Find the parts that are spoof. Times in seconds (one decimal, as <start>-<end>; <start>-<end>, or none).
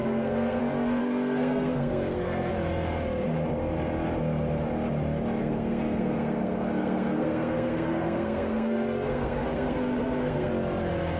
0.0-0.6; 1.0-2.5; 5.4-10.5